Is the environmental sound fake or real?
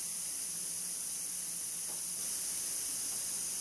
real